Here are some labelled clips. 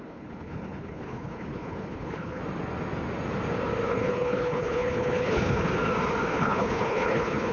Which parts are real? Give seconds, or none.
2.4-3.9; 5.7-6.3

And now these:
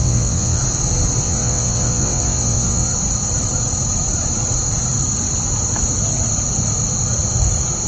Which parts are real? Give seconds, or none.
0.6-1.2; 2.9-7.9

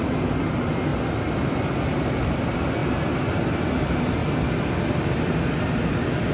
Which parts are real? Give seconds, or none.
0.0-6.3

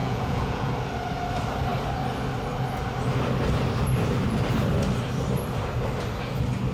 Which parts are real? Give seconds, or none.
0.7-6.7

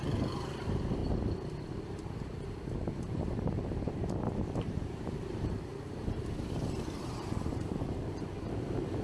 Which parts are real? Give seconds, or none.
1.0-1.8

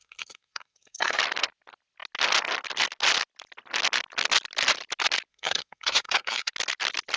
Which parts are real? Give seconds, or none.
1.2-5.3; 6.5-7.2